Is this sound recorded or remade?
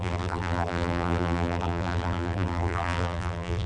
remade